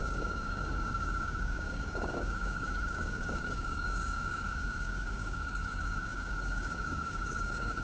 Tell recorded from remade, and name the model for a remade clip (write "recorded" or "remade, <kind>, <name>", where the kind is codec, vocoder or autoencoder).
remade, codec, DAC